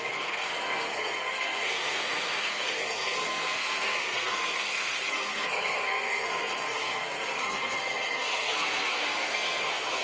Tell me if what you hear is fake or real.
fake